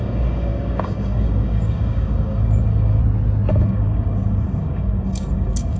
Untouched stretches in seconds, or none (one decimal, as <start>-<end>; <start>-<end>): 3.0-3.5